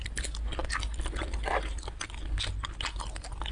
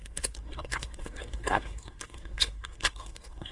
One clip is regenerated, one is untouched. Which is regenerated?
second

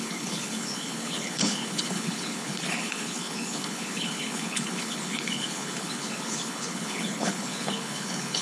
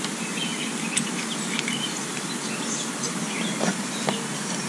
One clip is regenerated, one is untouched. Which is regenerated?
first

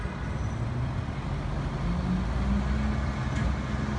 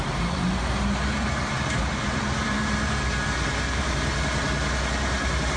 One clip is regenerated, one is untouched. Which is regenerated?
second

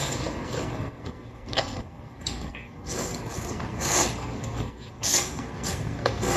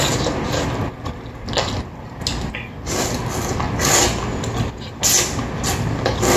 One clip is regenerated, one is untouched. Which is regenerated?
first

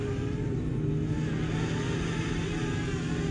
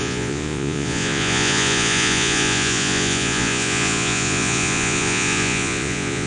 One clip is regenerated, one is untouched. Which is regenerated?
second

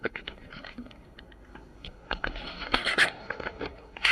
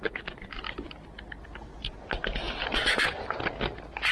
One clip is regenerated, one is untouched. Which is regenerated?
first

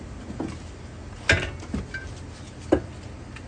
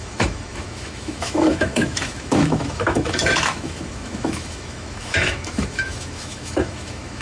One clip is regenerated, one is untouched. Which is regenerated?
second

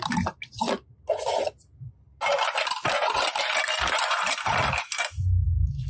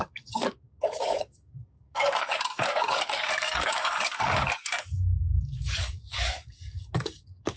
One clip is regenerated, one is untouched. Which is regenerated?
second